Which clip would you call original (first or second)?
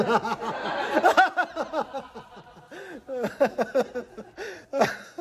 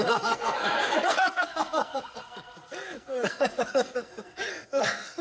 first